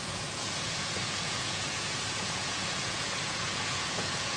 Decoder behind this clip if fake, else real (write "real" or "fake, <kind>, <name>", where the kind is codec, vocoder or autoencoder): fake, vocoder, Vocos